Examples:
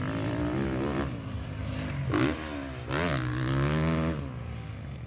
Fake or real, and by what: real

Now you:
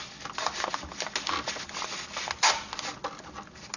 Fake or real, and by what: real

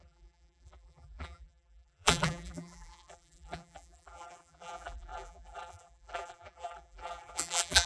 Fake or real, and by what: fake, vocoder, BigVGAN v2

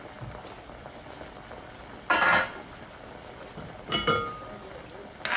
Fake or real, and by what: real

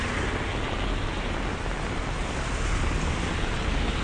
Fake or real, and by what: real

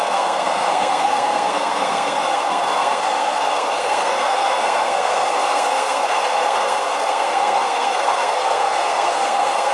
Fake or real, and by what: fake, codec, SNAC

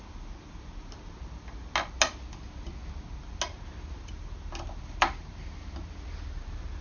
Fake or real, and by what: real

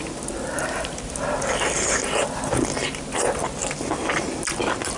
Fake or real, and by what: real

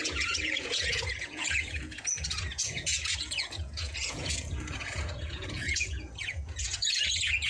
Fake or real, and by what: fake, vocoder, Vocos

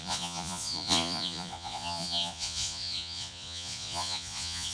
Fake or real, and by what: fake, vocoder, Vocos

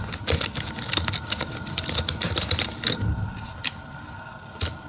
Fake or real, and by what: real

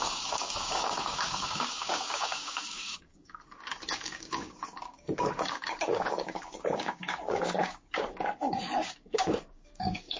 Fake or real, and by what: fake, codec, DAC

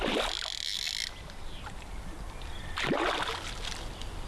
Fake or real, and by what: real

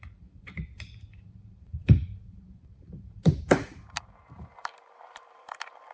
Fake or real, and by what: fake, vocoder, BigVGAN v2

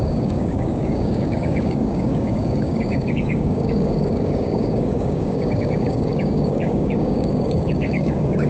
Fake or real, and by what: fake, codec, DAC